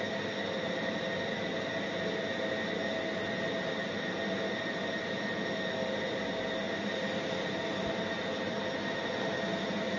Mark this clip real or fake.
real